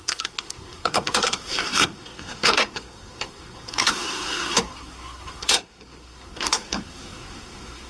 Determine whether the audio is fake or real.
fake